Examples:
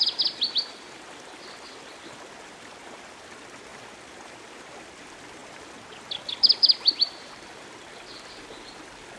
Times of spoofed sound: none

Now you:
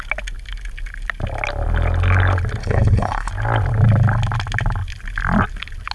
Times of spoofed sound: 2.6-3.3 (codec, HILCodec)

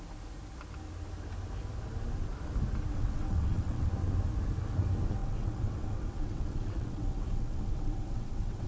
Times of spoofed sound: 2.9-3.9 (vocoder, WaveNeXt); 5.2-8.7

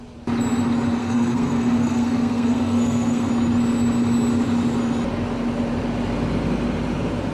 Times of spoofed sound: 1.0-3.3 (codec, SNAC)